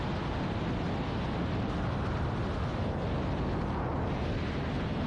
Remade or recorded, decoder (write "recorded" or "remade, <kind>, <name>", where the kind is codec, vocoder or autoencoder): recorded